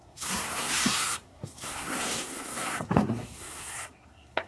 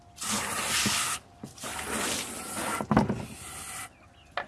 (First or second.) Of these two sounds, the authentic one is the second